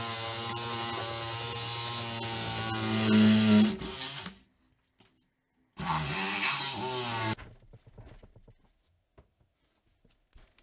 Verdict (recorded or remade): recorded